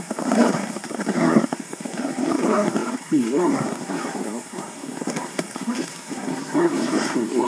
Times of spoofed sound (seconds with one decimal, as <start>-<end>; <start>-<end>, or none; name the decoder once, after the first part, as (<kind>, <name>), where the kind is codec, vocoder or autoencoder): 0.0-7.5 (codec, SNAC)